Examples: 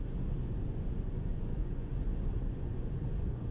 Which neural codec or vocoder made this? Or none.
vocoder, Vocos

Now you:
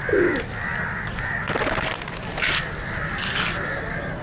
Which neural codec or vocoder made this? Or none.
none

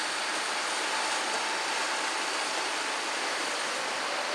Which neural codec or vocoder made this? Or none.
none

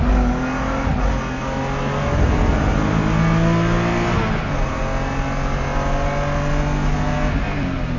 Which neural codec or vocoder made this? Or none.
none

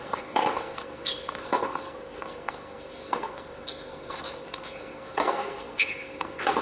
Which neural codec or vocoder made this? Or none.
codec, SNAC